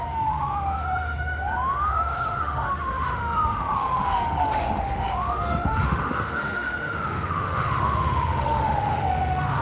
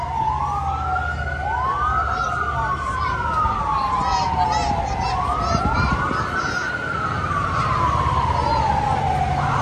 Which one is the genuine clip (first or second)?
second